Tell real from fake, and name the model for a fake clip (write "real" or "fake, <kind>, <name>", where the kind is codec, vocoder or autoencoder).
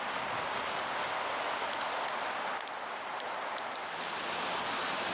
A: real